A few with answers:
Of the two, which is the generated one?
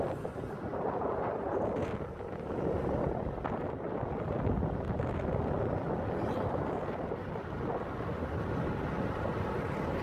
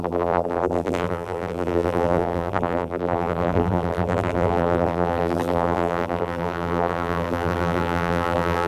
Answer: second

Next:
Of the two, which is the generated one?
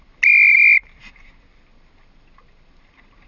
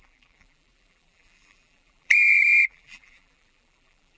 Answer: second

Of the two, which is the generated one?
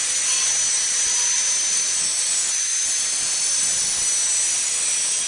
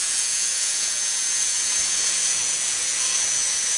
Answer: second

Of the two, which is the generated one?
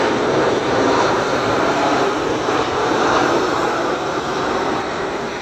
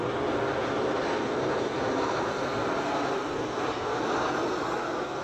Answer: first